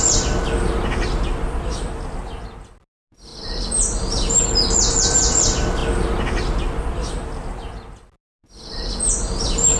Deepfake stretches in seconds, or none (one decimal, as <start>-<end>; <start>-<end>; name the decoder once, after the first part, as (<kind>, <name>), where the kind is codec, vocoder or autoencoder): none

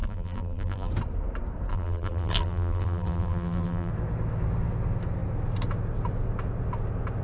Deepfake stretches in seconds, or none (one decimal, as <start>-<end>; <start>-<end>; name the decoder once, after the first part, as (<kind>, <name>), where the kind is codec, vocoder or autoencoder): 0.0-0.9 (vocoder, BigVGAN v2); 1.7-3.9

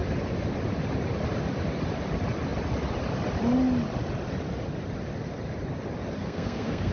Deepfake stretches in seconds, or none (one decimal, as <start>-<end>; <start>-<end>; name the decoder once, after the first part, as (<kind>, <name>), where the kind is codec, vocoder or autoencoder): 6.2-6.9 (codec, SNAC)

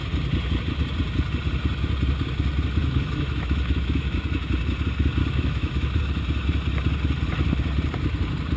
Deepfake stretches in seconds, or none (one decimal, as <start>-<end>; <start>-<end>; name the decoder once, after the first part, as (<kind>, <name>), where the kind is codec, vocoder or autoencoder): 2.8-4.2 (autoencoder, DAC-VAE); 5.2-6.0